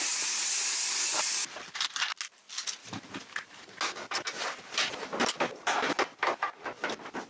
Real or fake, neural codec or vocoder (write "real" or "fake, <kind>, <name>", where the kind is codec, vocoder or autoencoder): real